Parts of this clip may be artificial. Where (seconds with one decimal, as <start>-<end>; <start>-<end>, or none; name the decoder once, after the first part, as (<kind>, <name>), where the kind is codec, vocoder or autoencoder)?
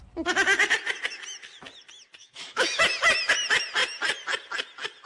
2.2-2.8 (autoencoder, DAC-VAE)